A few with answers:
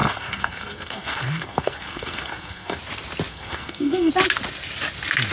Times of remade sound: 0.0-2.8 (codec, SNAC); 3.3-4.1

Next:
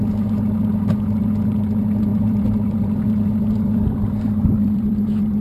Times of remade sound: 2.1-5.4 (vocoder, BigVGAN v2)

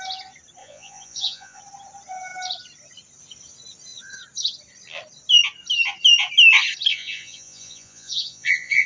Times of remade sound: 0.6-1.6 (vocoder, Vocos); 6.9-8.9

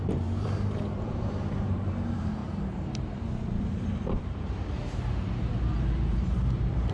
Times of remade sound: 0.0-2.4 (vocoder, BigVGAN v2); 4.2-6.9

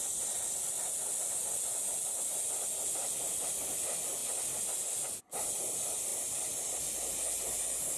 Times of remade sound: none